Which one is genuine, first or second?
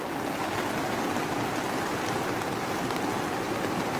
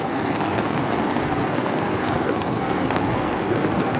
first